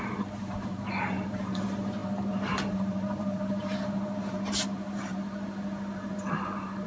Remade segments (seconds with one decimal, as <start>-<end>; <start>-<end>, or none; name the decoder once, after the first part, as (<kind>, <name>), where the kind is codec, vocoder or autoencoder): 0.0-6.9 (vocoder, BigVGAN v2)